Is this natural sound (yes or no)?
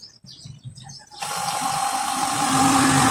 no